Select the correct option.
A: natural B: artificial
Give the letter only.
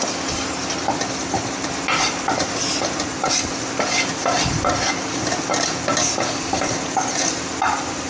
A